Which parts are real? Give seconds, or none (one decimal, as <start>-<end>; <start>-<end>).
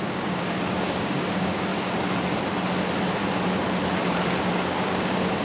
1.7-4.4